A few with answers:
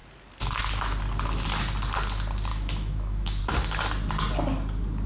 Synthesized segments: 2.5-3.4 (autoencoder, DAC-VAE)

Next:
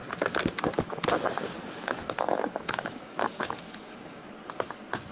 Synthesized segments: 1.6-4.3 (autoencoder, DAC-VAE)

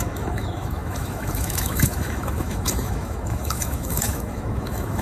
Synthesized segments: 0.0-5.0 (autoencoder, DAC-VAE)